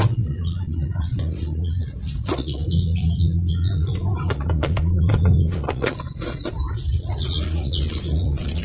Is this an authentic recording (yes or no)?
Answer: no